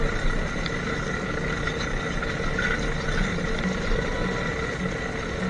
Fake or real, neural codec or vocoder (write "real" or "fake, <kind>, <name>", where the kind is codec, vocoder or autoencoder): real